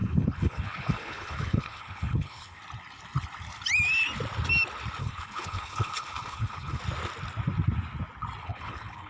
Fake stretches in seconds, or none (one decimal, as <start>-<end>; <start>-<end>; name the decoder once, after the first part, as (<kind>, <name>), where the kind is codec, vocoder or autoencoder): 0.0-2.6 (codec, HILCodec); 5.0-6.8; 8.4-9.1